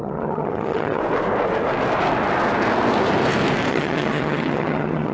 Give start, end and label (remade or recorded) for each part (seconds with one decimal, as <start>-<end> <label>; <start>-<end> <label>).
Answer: 0.0-1.0 remade; 1.0-3.7 recorded; 3.7-5.1 remade